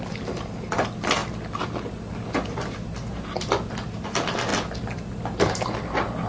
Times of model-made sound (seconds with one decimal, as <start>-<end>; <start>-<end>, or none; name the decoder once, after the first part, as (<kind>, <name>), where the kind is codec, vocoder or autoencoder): none